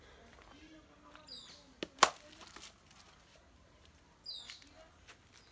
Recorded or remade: recorded